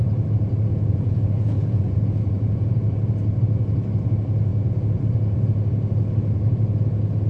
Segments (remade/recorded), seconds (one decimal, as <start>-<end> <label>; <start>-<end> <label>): 0.0-0.7 recorded; 0.7-2.9 remade; 2.9-4.5 recorded; 4.5-5.0 remade; 5.0-7.3 recorded